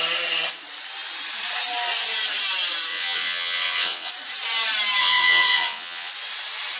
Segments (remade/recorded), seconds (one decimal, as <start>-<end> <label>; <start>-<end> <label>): 0.0-2.9 recorded; 2.9-4.1 remade; 4.1-5.0 recorded; 5.0-6.1 remade; 6.1-6.8 recorded